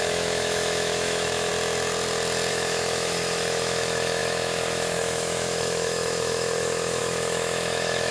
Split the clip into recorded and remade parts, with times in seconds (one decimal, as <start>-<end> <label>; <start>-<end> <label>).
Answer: 0.0-1.5 remade; 1.5-2.5 recorded; 2.5-8.1 remade